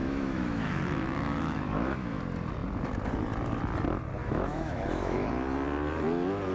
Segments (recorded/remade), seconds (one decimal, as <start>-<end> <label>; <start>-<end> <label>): 0.0-2.2 remade; 2.2-4.2 recorded; 4.2-5.3 remade; 5.3-6.5 recorded